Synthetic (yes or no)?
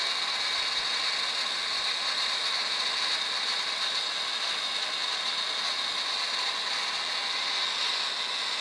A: no